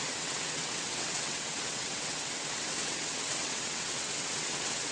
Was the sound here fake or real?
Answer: fake